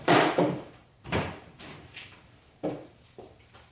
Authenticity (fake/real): fake